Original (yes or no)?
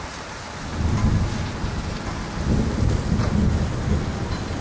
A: yes